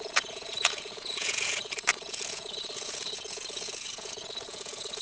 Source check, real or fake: fake